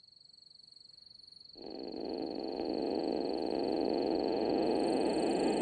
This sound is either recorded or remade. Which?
recorded